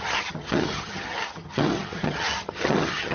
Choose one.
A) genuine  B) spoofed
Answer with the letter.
B